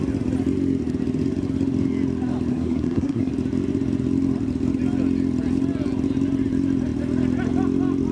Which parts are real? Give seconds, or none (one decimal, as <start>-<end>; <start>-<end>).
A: 0.0-2.5; 3.3-8.1